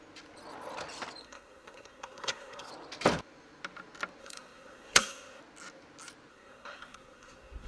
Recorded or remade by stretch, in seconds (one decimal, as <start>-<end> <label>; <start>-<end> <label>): 0.0-1.2 recorded; 1.2-2.7 remade; 2.7-4.2 recorded; 4.2-5.4 remade; 5.4-6.3 recorded; 6.3-7.7 remade

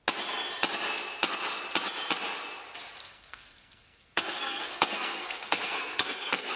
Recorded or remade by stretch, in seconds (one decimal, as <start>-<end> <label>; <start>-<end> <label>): 0.0-3.0 recorded; 3.0-6.6 remade

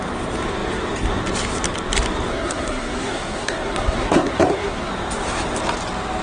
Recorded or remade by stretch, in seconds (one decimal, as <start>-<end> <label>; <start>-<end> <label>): 0.0-2.3 recorded; 2.3-4.9 remade; 4.9-6.2 recorded

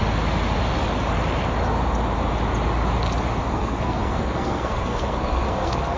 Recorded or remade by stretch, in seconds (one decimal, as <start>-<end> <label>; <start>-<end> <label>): 0.0-3.5 recorded; 3.5-6.0 remade

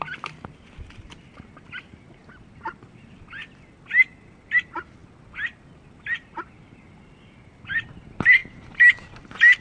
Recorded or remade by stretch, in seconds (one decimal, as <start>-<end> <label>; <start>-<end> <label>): 0.0-9.6 recorded

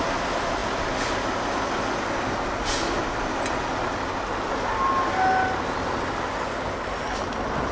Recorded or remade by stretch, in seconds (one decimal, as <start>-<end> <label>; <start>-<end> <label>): 0.0-7.7 recorded

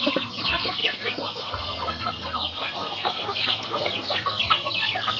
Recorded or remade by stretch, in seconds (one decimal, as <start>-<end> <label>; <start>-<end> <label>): 0.0-5.2 remade